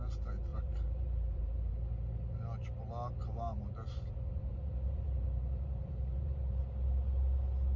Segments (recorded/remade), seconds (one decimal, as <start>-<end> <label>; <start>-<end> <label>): 0.0-0.5 recorded; 0.5-1.7 remade; 1.7-4.4 recorded; 4.4-6.6 remade; 6.6-7.8 recorded